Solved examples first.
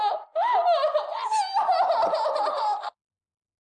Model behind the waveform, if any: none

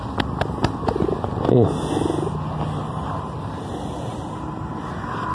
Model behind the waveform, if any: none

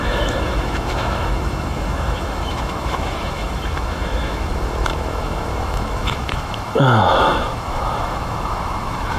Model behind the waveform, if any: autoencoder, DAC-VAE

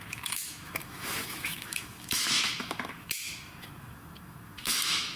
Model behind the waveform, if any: autoencoder, DAC-VAE